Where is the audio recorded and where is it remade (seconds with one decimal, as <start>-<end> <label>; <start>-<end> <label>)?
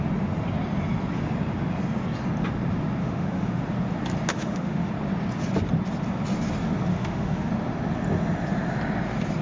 0.0-3.0 recorded; 3.0-3.6 remade; 3.6-4.3 recorded; 4.3-4.9 remade; 4.9-6.9 recorded; 6.9-7.5 remade; 7.5-9.4 recorded